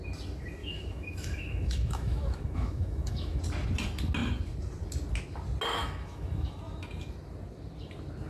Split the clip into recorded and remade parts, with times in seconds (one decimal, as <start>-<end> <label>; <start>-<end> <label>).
0.0-0.6 recorded; 0.6-3.4 remade; 3.4-5.8 recorded; 5.8-6.6 remade; 6.6-8.3 recorded